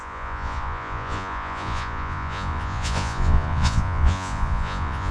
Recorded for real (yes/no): no